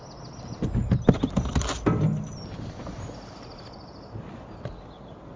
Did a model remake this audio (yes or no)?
no